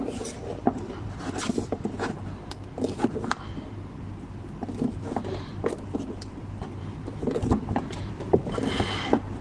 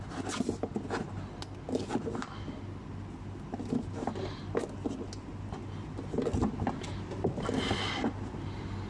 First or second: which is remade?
first